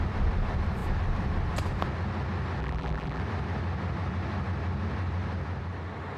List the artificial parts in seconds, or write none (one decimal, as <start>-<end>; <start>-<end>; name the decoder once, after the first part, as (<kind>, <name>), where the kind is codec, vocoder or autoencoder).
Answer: 2.6-3.2 (vocoder, BigVGAN v2)